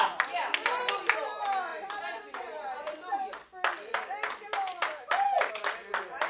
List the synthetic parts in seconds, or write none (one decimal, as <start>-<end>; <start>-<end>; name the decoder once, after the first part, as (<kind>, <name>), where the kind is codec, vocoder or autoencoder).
none